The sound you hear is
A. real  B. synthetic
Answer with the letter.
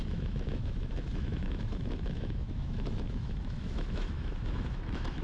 B